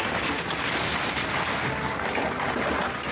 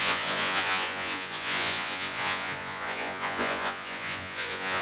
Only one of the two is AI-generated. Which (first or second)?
second